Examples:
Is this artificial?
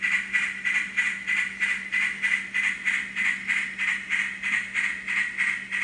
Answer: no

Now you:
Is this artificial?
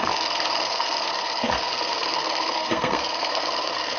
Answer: yes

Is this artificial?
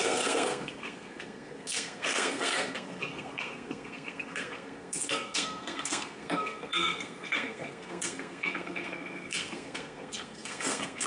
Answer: yes